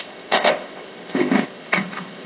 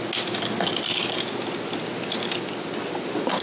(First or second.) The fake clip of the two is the first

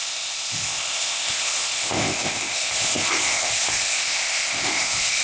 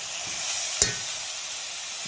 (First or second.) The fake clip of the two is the first